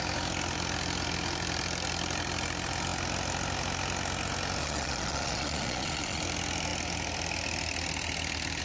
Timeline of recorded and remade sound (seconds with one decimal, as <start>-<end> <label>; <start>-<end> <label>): 0.0-4.6 recorded; 4.6-6.2 remade; 6.2-8.6 recorded